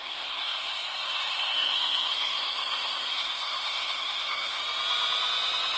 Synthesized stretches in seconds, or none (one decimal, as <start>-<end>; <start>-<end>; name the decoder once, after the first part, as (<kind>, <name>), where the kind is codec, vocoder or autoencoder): 0.0-4.6 (codec, SNAC)